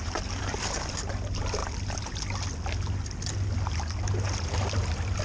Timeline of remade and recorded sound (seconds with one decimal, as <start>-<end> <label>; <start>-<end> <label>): 0.0-5.2 recorded